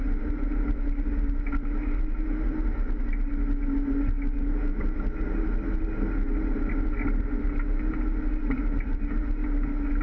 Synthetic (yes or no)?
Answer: no